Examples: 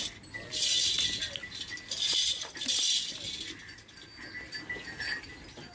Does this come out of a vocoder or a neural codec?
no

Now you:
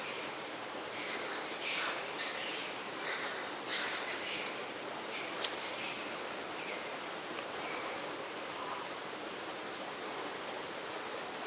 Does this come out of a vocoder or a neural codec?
no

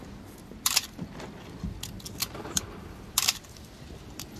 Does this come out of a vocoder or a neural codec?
no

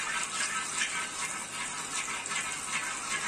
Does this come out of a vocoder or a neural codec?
no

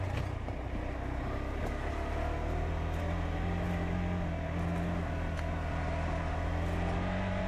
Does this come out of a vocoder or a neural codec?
no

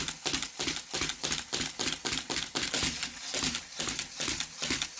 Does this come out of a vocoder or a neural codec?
no